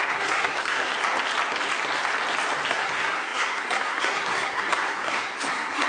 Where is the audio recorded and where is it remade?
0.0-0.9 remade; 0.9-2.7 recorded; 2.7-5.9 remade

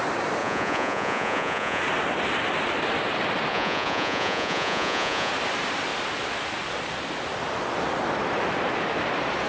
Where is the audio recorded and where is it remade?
0.0-0.4 recorded; 0.4-1.8 remade; 1.8-3.5 recorded; 3.5-5.3 remade; 5.3-9.5 recorded